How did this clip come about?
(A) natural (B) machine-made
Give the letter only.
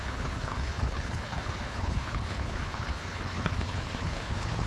B